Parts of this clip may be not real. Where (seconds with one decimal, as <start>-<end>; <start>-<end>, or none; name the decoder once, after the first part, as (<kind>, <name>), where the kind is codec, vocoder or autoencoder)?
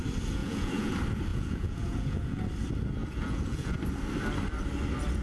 0.4-0.9 (vocoder, Vocos); 1.3-2.4; 3.0-3.8